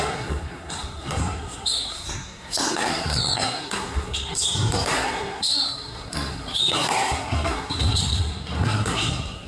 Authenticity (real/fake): fake